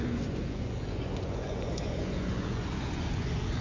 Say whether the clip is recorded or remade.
remade